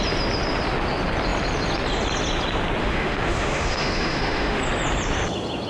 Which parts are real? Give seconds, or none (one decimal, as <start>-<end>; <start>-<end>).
0.0-2.8; 4.6-5.7